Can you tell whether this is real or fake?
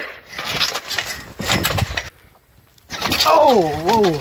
real